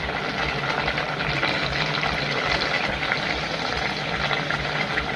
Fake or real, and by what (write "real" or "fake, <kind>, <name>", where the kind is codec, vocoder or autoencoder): real